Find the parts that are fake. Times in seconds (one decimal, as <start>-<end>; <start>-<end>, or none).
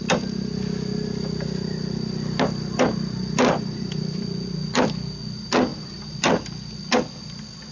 none